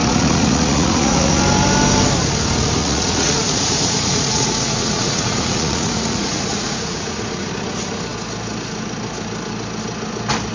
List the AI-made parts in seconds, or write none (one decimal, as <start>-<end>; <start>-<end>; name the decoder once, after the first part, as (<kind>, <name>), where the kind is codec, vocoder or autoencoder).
0.0-1.4 (vocoder, Vocos); 2.8-7.5